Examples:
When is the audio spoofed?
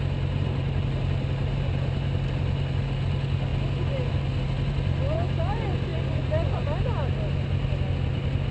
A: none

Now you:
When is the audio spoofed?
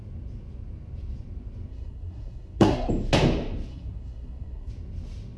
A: 1.7-2.9 (codec, SNAC); 3.7-4.7